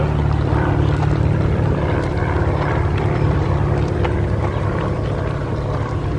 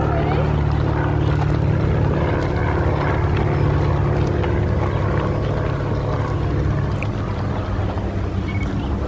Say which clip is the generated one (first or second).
first